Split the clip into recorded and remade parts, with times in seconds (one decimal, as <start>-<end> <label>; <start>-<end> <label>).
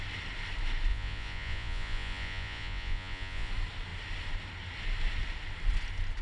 0.0-0.9 recorded; 0.9-3.5 remade; 3.5-6.2 recorded